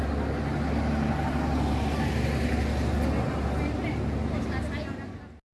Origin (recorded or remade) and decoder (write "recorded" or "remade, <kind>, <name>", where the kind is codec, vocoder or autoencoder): recorded